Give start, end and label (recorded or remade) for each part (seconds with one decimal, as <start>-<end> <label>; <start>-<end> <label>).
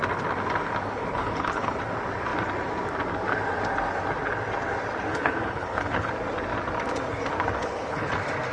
0.0-1.0 recorded; 1.0-1.8 remade; 1.8-5.1 recorded; 5.1-6.1 remade; 6.1-7.6 recorded; 7.6-8.1 remade; 8.1-8.5 recorded